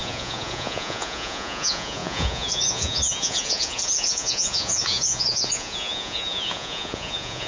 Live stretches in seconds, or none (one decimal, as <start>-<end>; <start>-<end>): none